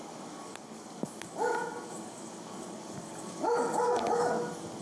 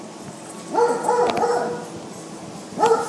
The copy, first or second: first